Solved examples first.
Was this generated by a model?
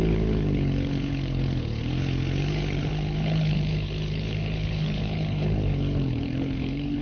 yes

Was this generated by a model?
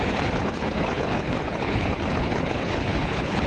yes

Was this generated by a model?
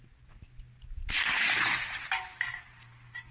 no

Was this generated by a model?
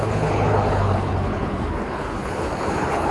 yes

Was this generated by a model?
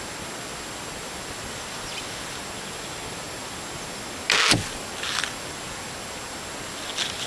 no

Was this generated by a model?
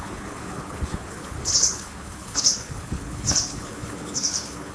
yes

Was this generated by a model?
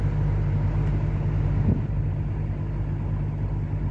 no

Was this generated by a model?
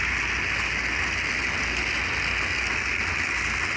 no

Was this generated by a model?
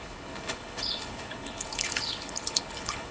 yes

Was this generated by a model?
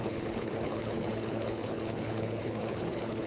yes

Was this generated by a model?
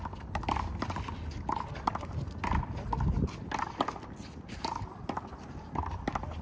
no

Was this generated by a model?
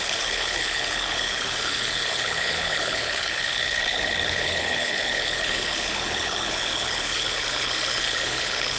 yes